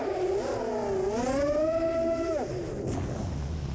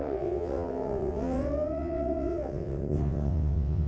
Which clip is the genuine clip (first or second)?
first